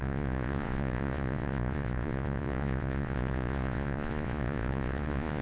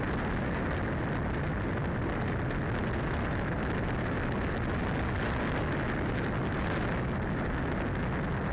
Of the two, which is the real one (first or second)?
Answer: second